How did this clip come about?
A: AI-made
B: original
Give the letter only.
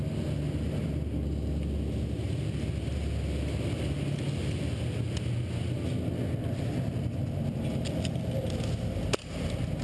B